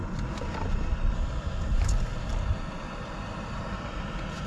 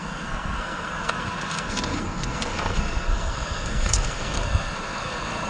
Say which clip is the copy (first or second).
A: second